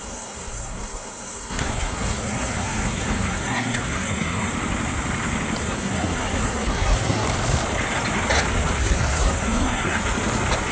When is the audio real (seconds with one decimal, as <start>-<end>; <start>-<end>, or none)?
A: 4.5-5.6; 7.3-8.8; 10.0-10.7